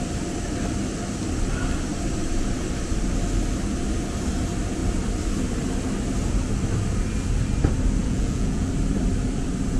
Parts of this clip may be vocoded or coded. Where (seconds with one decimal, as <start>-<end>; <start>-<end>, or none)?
8.0-8.7